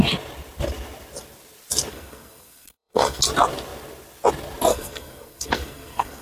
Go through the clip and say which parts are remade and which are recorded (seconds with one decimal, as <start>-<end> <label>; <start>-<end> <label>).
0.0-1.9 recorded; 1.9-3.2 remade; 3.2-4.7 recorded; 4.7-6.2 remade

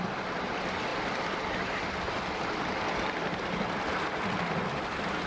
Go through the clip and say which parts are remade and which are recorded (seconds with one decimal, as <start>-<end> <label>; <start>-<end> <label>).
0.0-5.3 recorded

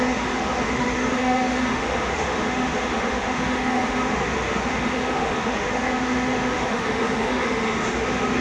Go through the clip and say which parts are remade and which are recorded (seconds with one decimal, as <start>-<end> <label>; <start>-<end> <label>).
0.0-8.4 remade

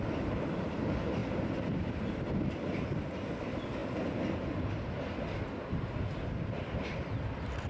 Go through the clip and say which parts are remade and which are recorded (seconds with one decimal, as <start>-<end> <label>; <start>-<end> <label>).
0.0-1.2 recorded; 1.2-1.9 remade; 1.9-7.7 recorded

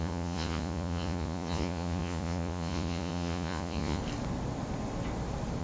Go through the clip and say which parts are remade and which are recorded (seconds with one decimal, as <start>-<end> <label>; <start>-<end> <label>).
0.0-4.0 remade; 4.0-5.6 recorded